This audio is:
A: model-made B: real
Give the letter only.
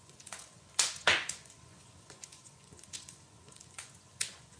A